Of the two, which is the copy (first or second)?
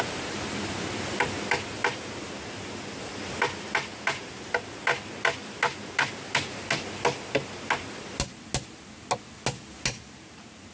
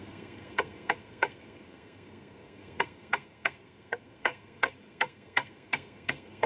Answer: second